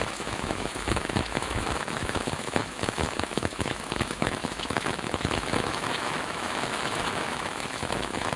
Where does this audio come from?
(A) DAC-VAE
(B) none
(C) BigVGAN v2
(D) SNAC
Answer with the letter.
A